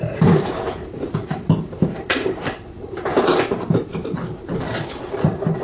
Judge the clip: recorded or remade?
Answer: remade